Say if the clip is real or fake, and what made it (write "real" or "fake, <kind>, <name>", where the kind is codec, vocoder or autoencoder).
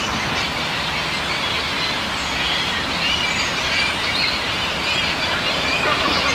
real